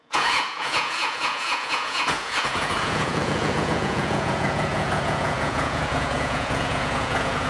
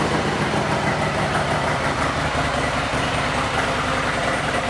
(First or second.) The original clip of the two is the second